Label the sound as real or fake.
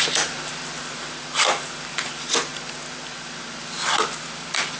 real